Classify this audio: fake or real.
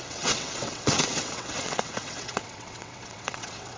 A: fake